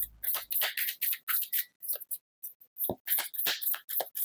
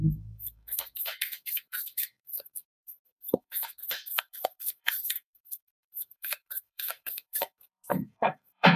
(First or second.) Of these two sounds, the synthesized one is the second